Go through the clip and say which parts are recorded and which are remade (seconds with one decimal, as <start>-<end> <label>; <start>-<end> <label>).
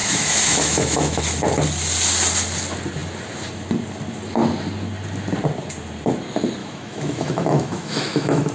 0.0-1.2 remade; 1.2-6.6 recorded; 6.6-8.5 remade